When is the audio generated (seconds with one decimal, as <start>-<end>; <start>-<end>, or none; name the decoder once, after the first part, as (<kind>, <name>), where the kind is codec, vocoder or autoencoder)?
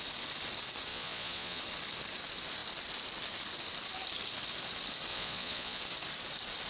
0.9-1.6 (vocoder, Vocos); 5.1-5.8